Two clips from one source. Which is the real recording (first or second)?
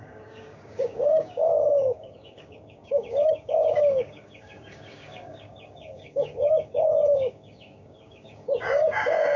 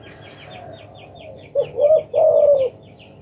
second